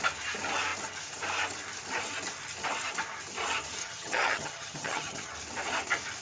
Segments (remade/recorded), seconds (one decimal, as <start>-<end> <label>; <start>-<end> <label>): 0.0-3.8 recorded; 3.8-5.3 remade; 5.3-6.2 recorded

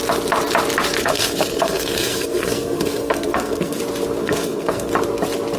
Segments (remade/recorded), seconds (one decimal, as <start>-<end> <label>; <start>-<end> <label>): 0.0-1.0 recorded; 1.0-3.8 remade; 3.8-4.2 recorded; 4.2-4.9 remade; 4.9-5.6 recorded

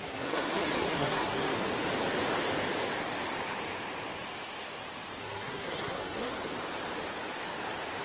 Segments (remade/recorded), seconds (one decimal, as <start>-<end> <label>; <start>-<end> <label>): 0.0-1.5 remade; 1.5-5.2 recorded; 5.2-6.3 remade; 6.3-8.0 recorded

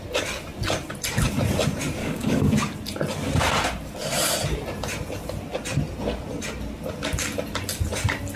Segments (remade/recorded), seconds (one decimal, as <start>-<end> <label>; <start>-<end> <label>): 0.0-2.0 recorded; 2.0-2.5 remade; 2.5-8.4 recorded

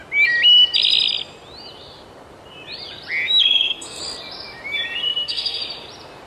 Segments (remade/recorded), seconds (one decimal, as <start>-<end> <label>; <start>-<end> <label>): 0.0-3.4 recorded; 3.4-4.0 remade; 4.0-5.0 recorded; 5.0-5.6 remade; 5.6-6.3 recorded

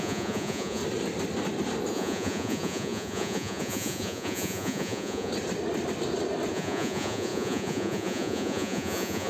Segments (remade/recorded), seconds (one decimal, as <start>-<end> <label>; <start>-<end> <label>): 0.0-0.8 remade; 0.8-1.9 recorded; 1.9-5.3 remade; 5.3-6.5 recorded; 6.5-9.3 remade

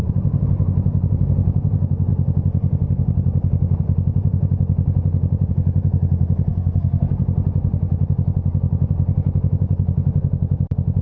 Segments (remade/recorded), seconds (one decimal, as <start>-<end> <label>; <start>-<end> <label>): 0.0-6.5 recorded; 6.5-7.2 remade; 7.2-11.0 recorded

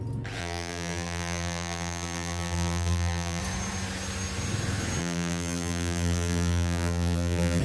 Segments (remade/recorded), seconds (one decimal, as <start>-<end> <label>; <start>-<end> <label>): 0.0-0.4 recorded; 0.4-3.4 remade; 3.4-5.0 recorded; 5.0-7.6 remade